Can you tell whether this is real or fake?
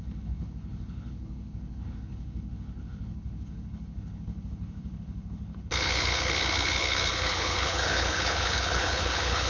fake